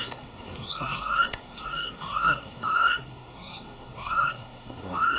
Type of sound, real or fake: fake